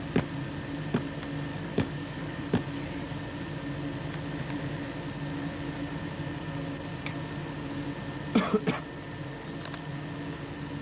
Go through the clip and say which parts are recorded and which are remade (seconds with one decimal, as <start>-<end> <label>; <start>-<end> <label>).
0.0-1.5 recorded; 1.5-2.4 remade; 2.4-10.8 recorded